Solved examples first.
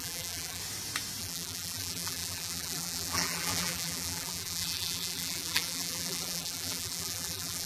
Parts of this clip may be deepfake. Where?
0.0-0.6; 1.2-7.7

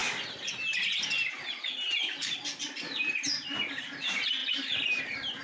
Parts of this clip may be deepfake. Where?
1.5-5.4

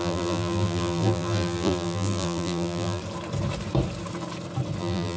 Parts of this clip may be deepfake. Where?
0.0-3.0; 4.8-5.2

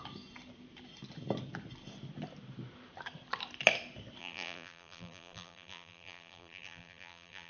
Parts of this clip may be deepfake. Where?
4.2-7.5

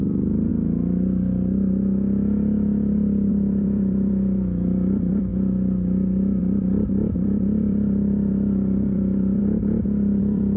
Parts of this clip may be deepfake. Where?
0.0-0.5; 3.3-5.3; 6.4-9.4; 10.2-10.6

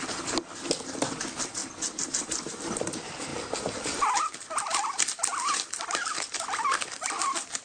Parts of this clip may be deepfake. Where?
0.0-1.6; 2.1-3.3; 4.0-7.6

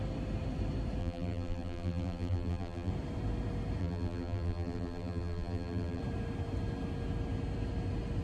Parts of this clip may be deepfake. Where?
1.0-2.9; 3.8-6.0

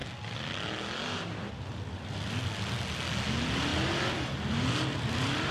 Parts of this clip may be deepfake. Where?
3.7-4.3